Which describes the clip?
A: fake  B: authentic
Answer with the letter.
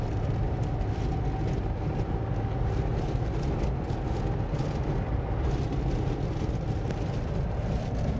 B